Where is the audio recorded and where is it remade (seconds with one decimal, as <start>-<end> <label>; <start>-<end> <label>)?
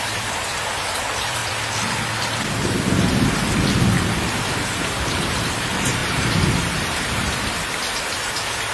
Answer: 0.0-1.4 remade; 1.4-4.3 recorded; 4.3-8.7 remade